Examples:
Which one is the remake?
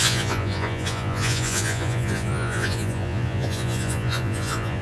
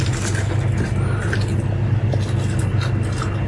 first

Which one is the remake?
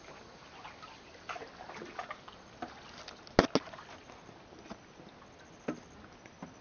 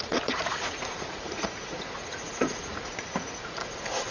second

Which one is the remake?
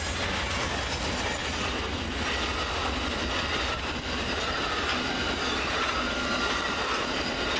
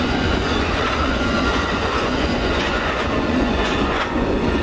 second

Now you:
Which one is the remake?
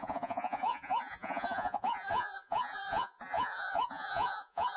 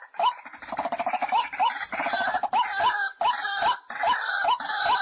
first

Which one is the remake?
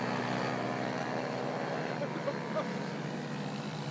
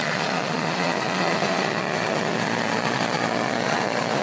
second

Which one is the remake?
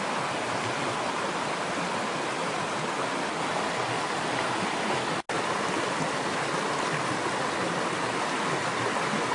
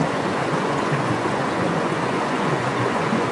second